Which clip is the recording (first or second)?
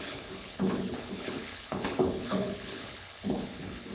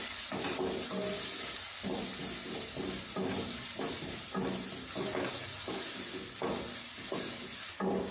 second